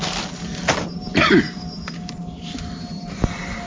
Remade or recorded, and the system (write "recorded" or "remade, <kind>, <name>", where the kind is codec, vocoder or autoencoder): recorded